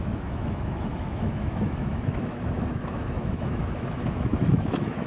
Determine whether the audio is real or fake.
fake